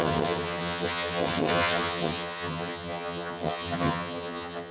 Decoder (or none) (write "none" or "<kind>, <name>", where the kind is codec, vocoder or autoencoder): vocoder, HiFi-GAN